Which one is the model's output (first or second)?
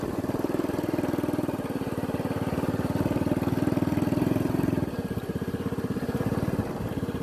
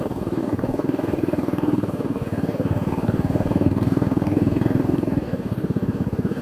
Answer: second